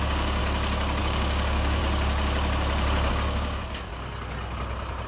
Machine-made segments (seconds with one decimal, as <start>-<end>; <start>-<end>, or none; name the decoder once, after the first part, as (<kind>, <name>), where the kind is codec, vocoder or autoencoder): 0.0-0.4 (codec, DAC); 1.0-1.8; 3.1-3.9